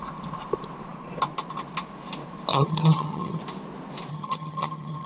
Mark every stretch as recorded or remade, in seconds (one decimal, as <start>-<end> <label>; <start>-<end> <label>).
0.0-2.5 recorded; 2.5-3.4 remade; 3.4-4.1 recorded; 4.1-5.1 remade